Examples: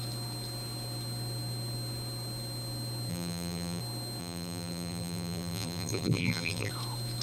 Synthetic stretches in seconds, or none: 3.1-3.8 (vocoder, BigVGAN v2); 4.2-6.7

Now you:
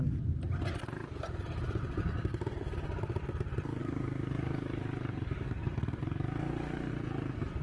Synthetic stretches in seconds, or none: 3.8-6.9 (codec, DAC)

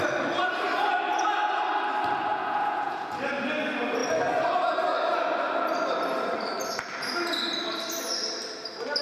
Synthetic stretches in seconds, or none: 2.3-3.2 (vocoder, Vocos)

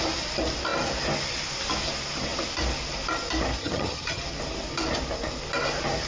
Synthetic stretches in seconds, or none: 3.6-4.2 (vocoder, HiFi-GAN)

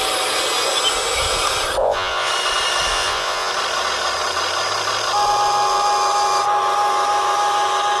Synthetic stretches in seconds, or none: 1.8-2.3 (vocoder, Vocos); 2.9-3.5

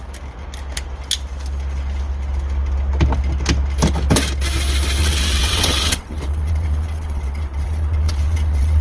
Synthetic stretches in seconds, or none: 5.0-8.8 (vocoder, WaveNeXt)

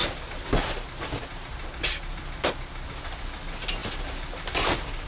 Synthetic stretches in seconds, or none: none